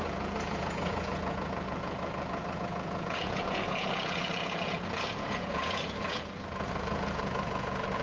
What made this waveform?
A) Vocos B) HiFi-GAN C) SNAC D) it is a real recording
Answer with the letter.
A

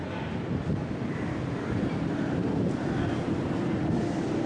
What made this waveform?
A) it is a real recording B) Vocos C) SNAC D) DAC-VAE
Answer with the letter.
A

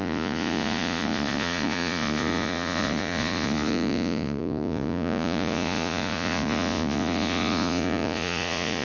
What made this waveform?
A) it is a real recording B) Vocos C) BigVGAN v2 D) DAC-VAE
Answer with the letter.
B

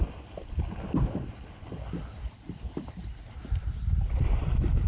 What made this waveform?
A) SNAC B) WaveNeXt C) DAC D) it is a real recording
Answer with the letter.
D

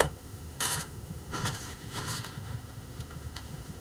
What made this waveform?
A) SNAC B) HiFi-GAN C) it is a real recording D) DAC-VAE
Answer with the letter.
D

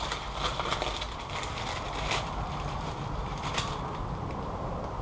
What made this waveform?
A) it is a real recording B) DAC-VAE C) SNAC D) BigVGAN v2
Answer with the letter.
D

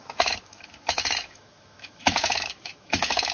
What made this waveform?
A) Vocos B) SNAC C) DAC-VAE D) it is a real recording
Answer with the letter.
C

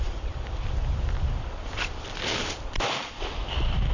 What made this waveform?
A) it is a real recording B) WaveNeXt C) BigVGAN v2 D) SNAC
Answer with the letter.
C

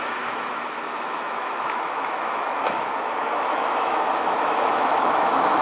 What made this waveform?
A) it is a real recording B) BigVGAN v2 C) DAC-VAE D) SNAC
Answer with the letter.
C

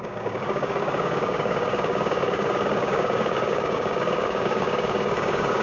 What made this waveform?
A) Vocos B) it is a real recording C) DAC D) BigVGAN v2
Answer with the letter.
C